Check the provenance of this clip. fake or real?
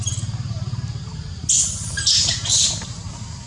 real